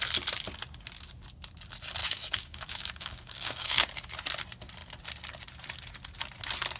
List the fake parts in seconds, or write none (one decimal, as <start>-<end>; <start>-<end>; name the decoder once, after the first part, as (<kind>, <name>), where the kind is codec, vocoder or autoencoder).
2.0-3.9 (codec, DAC)